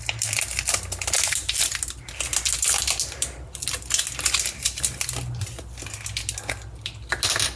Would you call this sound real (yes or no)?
yes